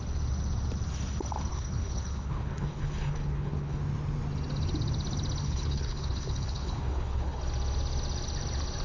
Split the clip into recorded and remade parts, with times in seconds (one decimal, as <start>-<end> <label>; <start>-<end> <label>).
0.0-1.5 recorded; 1.5-3.8 remade; 3.8-5.4 recorded; 5.4-7.4 remade; 7.4-8.8 recorded